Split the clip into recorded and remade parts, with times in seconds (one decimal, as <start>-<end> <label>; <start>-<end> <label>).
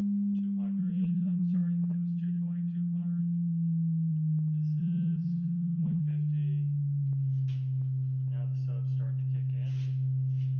0.0-0.8 recorded; 0.8-3.2 remade; 3.2-4.8 recorded; 4.8-6.0 remade; 6.0-10.6 recorded